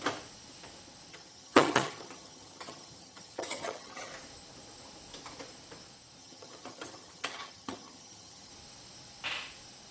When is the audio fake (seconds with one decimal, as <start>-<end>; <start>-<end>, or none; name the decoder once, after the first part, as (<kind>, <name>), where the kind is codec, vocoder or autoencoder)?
1.1-4.1 (vocoder, HiFi-GAN); 6.2-8.5